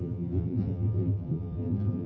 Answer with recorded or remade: remade